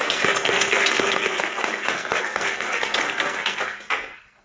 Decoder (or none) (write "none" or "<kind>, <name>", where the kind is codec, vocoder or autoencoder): codec, SNAC